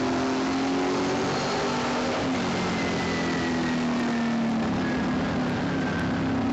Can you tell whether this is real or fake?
real